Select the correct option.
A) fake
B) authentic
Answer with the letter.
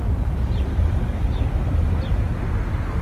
B